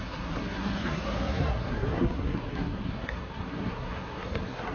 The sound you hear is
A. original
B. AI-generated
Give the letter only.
B